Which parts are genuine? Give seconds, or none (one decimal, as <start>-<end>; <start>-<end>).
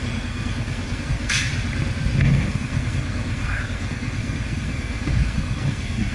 1.5-2.2